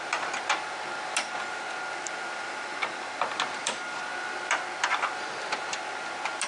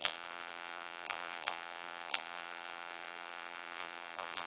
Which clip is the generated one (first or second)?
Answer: second